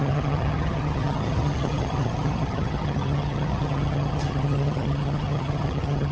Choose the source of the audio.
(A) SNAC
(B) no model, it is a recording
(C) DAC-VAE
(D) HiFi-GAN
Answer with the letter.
D